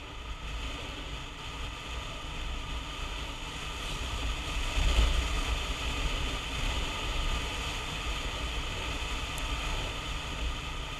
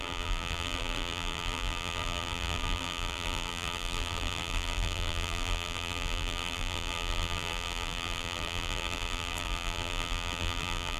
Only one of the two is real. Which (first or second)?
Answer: first